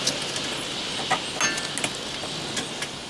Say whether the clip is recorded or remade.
recorded